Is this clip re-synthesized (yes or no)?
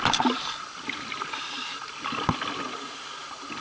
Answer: no